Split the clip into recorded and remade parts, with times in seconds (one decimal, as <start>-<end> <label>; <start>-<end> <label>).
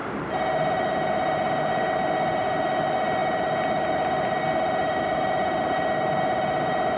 0.0-7.0 recorded